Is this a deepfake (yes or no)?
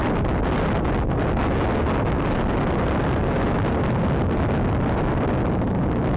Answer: no